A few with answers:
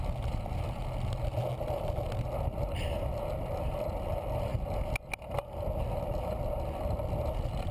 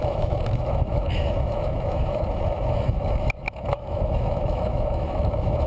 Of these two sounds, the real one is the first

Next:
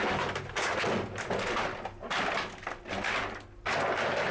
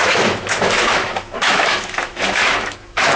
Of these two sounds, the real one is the first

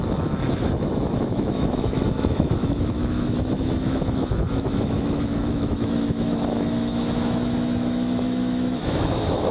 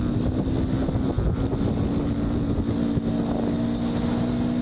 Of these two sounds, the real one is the second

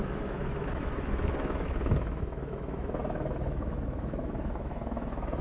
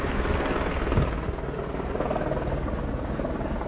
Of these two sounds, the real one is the second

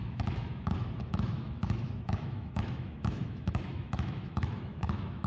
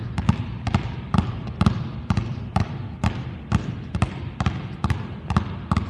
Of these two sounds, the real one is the second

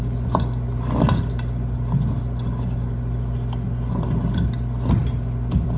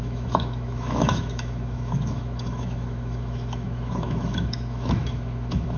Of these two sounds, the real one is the first